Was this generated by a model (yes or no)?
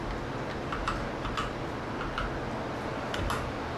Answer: no